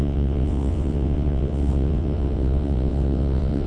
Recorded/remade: remade